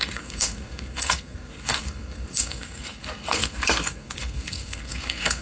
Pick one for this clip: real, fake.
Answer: fake